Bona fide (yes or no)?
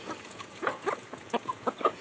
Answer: no